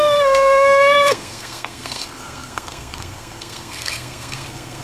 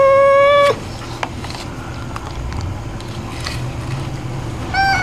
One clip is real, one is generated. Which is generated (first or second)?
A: first